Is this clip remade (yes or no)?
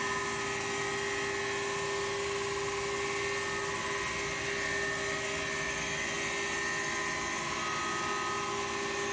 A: no